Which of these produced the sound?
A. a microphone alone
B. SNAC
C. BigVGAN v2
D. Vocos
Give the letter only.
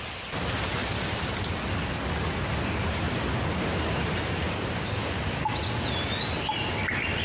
A